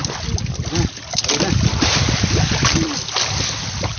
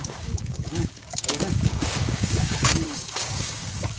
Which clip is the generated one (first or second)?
second